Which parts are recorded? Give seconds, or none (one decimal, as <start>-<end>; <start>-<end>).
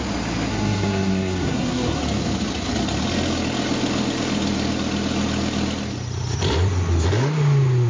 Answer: 0.0-0.5; 2.0-7.9